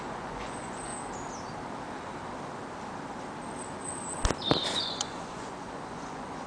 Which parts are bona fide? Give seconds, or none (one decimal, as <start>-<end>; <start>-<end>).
0.9-4.8